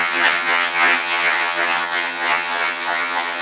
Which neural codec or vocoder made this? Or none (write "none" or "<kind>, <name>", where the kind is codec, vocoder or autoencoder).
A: vocoder, HiFi-GAN